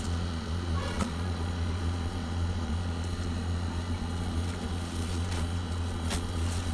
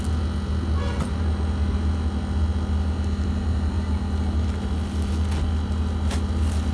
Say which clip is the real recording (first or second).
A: second